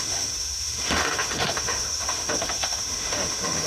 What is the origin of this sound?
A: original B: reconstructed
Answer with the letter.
B